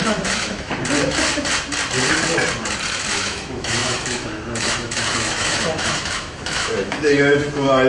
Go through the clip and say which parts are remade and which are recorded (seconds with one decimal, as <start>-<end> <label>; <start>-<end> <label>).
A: 0.0-0.7 remade; 0.7-3.1 recorded; 3.1-7.9 remade